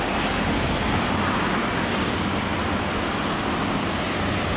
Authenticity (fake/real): real